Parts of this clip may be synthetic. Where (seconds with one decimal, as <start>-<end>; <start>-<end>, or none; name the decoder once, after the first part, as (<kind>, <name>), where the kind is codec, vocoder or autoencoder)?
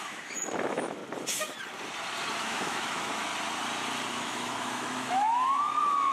0.0-1.0 (autoencoder, DAC-VAE); 2.4-3.3; 4.1-6.1